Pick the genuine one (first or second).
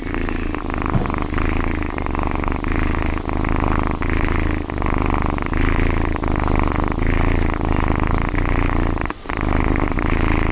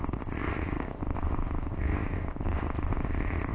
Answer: first